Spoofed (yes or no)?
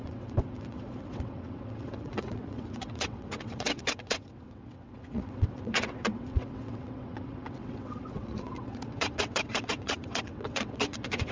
yes